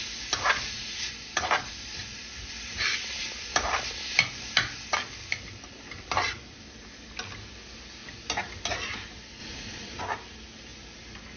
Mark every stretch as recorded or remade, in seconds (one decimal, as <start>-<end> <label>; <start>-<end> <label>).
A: 0.0-9.4 recorded; 9.4-10.0 remade; 10.0-11.4 recorded